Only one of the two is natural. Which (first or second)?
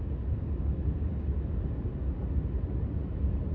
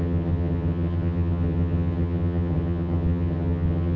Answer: first